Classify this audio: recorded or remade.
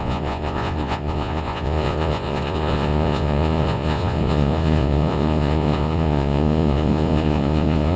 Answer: remade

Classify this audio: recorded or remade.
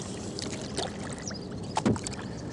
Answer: recorded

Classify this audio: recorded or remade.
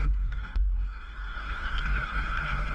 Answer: remade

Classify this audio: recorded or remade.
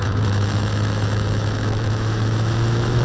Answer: remade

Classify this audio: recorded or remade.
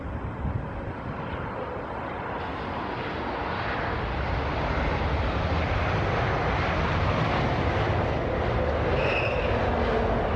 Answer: recorded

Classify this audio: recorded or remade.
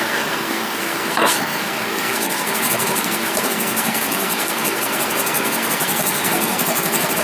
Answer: remade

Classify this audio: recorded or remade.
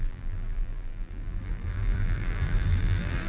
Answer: remade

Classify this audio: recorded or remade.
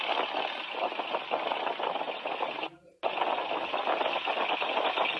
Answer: recorded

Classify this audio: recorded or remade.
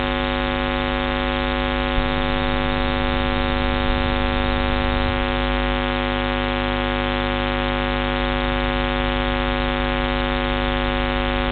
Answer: recorded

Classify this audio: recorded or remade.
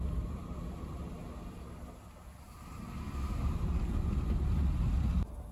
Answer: recorded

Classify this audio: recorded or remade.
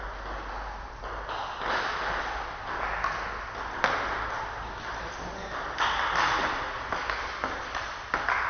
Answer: recorded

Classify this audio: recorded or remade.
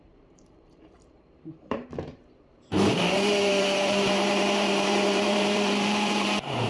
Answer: remade